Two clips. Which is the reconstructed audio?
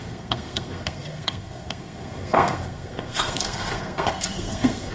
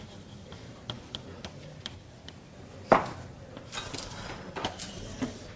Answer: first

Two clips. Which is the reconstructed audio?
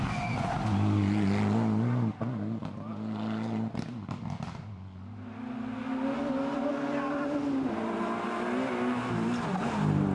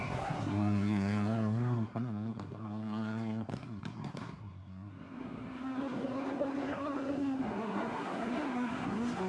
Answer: second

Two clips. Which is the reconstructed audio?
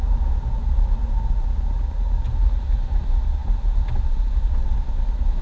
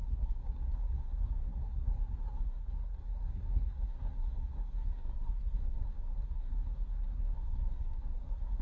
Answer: second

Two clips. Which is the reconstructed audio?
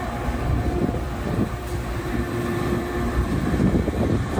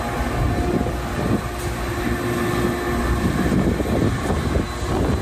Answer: first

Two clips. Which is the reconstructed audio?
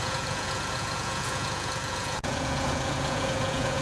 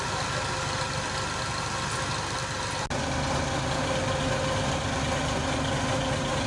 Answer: first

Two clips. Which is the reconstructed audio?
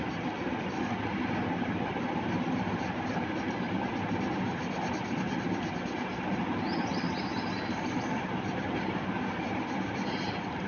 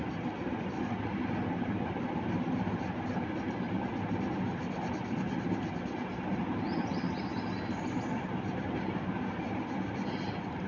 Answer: first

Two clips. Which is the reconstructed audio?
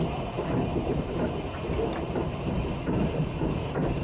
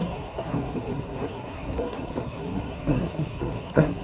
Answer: second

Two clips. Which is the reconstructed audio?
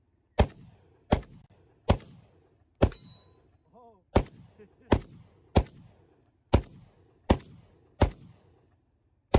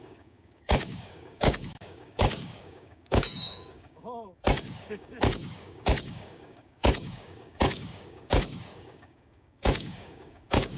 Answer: second